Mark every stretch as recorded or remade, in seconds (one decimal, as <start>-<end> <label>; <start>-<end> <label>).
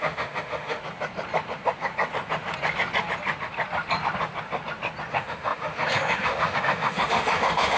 0.0-0.8 remade; 0.8-5.1 recorded; 5.1-7.8 remade